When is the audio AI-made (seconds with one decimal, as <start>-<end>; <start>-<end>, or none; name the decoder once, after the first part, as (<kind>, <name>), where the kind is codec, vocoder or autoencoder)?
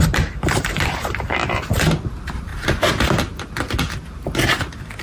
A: 0.0-2.5 (vocoder, BigVGAN v2); 4.6-5.0